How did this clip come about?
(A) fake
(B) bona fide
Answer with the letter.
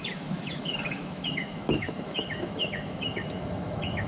A